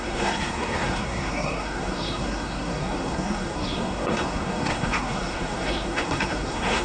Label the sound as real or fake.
fake